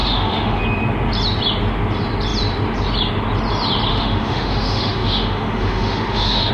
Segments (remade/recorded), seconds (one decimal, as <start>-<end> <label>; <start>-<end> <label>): 0.0-0.6 remade; 0.6-3.9 recorded; 3.9-6.5 remade